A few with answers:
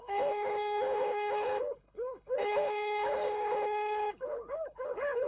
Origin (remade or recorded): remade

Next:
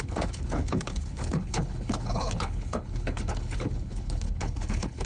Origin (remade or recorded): remade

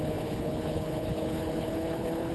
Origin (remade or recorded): remade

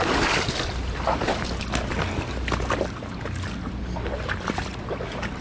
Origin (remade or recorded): recorded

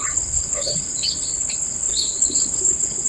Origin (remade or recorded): remade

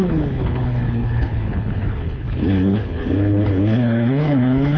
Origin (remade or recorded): remade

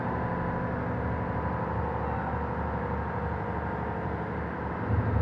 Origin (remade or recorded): recorded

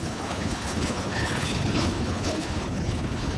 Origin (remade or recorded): remade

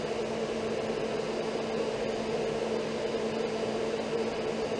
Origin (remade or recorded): recorded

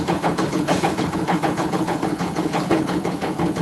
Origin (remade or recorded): remade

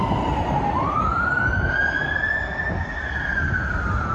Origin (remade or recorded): recorded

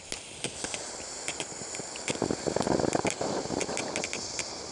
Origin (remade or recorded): recorded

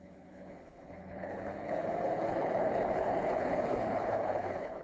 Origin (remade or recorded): remade